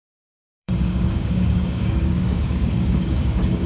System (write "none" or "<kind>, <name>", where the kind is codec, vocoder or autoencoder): codec, DAC